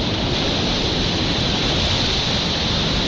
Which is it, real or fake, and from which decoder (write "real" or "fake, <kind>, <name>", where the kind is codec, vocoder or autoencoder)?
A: real